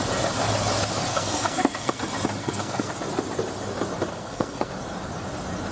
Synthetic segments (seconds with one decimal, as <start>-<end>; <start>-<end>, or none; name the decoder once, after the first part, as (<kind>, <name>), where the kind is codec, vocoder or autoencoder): 1.1-2.0 (codec, SNAC); 2.4-2.9; 4.1-4.7

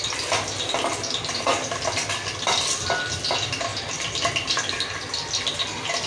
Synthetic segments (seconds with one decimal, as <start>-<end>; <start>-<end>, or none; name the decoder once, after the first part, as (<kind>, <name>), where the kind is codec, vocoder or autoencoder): none

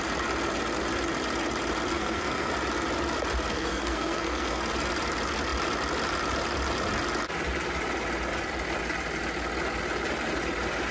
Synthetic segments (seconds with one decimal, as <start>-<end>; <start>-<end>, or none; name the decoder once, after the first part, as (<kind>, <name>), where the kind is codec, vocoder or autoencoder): 1.9-2.5 (codec, SNAC); 3.5-4.6

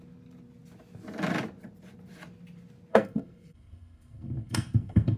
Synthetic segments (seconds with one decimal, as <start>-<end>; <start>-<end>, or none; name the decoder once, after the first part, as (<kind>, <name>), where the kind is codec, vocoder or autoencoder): 2.9-5.2 (codec, SNAC)

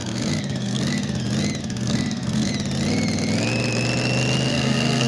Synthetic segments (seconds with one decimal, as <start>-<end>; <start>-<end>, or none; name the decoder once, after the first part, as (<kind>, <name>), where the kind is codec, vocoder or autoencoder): 0.0-1.2 (codec, SNAC); 1.6-2.5; 4.5-5.1

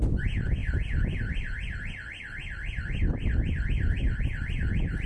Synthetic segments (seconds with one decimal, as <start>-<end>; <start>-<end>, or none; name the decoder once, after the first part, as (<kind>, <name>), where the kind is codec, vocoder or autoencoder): none